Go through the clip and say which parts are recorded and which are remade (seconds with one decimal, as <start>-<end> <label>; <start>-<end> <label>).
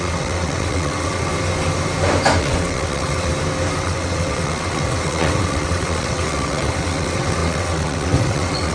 0.0-1.3 remade; 1.3-2.4 recorded; 2.4-3.3 remade; 3.3-3.8 recorded; 3.8-8.7 remade